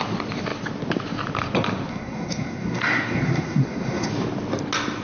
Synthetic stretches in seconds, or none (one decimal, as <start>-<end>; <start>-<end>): 1.9-4.1